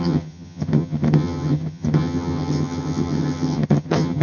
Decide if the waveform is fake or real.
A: fake